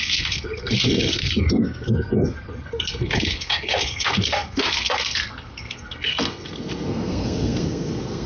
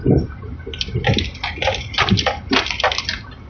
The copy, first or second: first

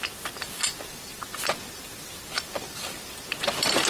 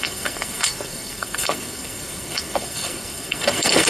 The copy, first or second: second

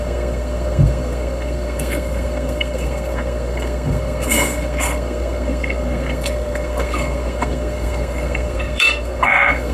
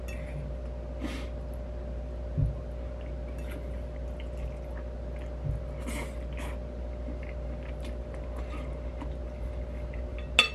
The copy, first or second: first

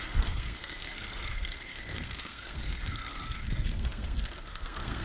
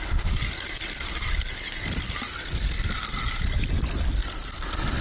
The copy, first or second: first